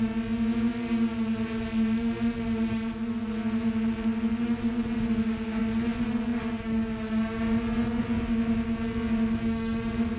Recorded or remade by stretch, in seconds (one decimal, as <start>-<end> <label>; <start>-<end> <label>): 0.0-10.2 recorded